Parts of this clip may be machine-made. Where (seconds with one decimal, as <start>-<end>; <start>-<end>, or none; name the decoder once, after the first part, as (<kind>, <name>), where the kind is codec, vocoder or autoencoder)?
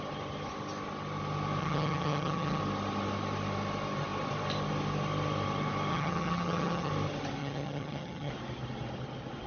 1.6-2.6 (vocoder, HiFi-GAN); 5.9-6.9; 7.4-8.3